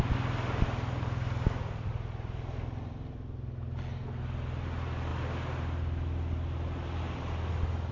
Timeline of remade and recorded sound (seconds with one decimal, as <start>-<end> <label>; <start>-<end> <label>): 0.0-7.9 recorded